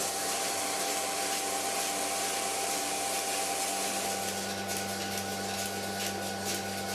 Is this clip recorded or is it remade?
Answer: recorded